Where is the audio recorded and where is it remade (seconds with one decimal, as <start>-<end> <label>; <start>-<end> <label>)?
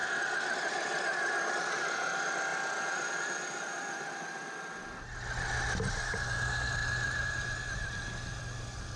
0.0-9.0 recorded